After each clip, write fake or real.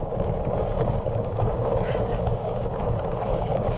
fake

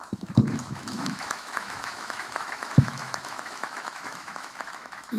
fake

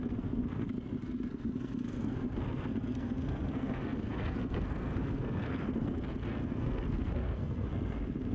fake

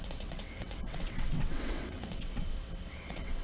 fake